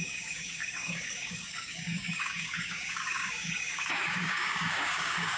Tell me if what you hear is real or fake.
fake